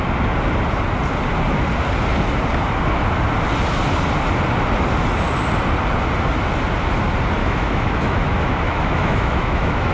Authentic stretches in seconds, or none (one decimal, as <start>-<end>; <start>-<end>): 0.0-7.4